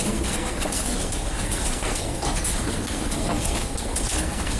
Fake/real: fake